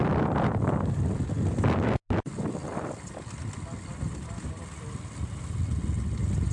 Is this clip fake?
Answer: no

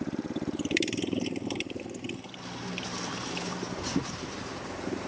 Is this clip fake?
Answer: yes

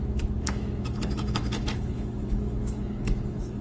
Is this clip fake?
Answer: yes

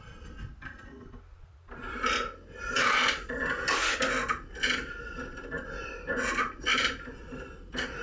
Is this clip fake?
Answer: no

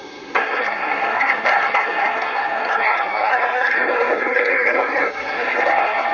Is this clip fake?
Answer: yes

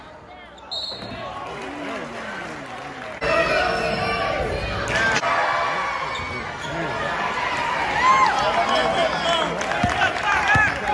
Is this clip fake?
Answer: no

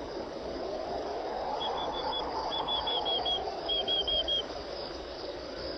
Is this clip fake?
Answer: yes